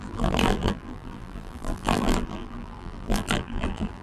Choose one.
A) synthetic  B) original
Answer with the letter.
A